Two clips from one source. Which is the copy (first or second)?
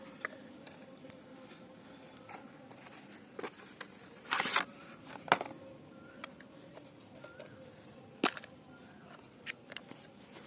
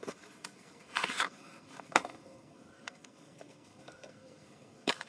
second